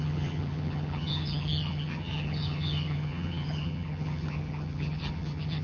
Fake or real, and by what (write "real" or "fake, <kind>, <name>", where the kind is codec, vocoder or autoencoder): fake, vocoder, HiFi-GAN